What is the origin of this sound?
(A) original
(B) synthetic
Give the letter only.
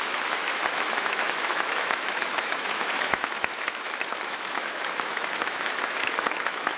B